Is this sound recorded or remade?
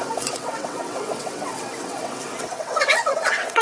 remade